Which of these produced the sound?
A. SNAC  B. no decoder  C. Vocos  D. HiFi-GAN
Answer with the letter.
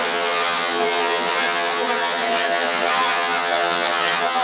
D